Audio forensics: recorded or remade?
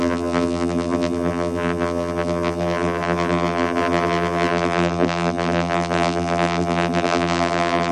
remade